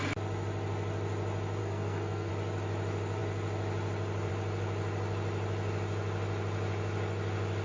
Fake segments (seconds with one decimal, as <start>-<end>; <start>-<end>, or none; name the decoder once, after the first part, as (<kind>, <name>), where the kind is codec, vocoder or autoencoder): 1.6-2.3 (codec, SNAC)